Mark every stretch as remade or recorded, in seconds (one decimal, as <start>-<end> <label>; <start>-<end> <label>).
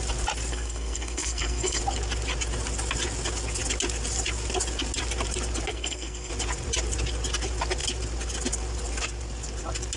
0.0-0.5 recorded; 0.5-1.8 remade; 1.8-5.7 recorded; 5.7-6.3 remade; 6.3-10.0 recorded